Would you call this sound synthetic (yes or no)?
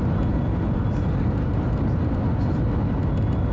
no